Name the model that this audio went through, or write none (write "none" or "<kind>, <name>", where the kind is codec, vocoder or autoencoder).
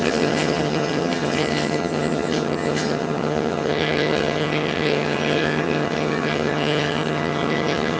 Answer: vocoder, HiFi-GAN